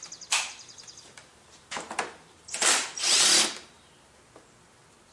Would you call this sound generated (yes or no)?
no